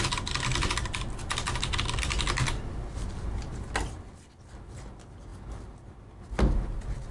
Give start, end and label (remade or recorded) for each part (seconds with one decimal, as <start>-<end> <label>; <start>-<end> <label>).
0.0-7.1 recorded